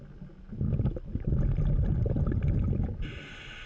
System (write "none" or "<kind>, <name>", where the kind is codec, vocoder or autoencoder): none